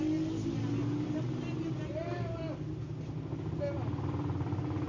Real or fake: real